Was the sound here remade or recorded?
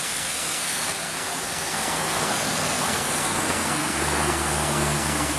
remade